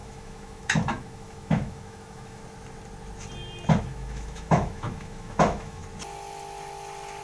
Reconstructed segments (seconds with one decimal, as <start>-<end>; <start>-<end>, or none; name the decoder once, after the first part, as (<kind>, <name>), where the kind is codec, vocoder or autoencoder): 0.0-2.4 (autoencoder, DAC-VAE); 3.8-5.8